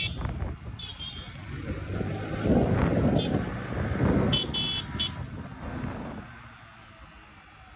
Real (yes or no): yes